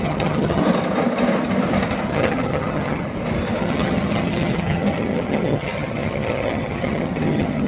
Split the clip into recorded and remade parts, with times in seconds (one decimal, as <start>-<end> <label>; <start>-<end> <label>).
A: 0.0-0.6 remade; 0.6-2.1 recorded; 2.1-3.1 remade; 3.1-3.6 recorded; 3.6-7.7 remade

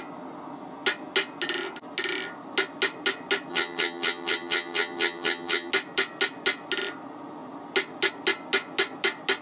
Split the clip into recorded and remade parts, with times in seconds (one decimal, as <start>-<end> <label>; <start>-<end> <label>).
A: 0.0-3.5 recorded; 3.5-5.7 remade; 5.7-9.4 recorded

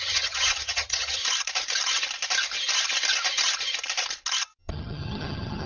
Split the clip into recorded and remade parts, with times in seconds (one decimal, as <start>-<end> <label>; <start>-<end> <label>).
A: 0.0-1.2 remade; 1.2-4.6 recorded; 4.6-5.7 remade

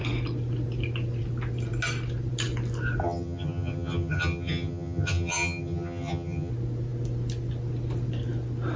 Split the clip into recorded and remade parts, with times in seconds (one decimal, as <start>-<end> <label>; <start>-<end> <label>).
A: 0.0-3.0 recorded; 3.0-6.5 remade; 6.5-8.8 recorded

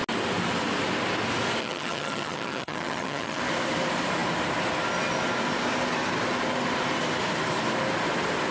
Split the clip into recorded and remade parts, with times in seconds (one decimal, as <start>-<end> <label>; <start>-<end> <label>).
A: 0.0-1.6 recorded; 1.6-3.4 remade; 3.4-8.5 recorded

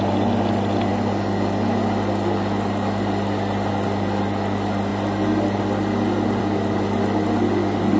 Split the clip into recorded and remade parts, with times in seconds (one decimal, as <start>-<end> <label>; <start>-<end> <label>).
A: 0.0-8.0 recorded